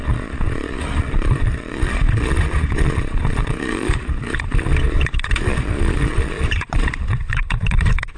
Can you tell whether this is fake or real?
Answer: fake